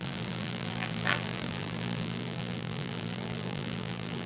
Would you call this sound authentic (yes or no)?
no